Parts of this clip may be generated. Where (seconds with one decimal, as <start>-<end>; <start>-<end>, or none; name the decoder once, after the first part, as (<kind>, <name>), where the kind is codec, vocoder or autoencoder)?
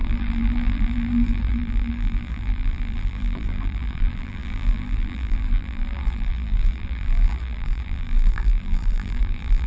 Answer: 0.0-9.7 (vocoder, BigVGAN v2)